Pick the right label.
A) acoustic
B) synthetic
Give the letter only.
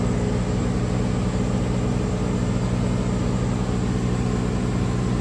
A